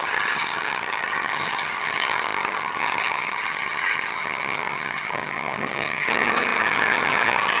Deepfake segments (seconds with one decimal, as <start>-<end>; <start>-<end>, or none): 0.0-7.6